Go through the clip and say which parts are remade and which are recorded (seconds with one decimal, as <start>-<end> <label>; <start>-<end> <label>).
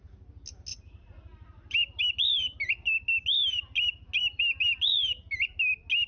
0.0-0.7 recorded; 0.7-2.0 remade; 2.0-4.2 recorded; 4.2-5.5 remade; 5.5-6.1 recorded